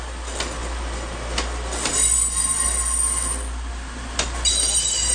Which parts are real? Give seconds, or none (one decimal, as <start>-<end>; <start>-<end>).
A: 0.0-5.1